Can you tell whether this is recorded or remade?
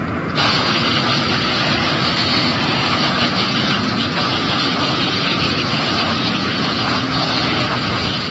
remade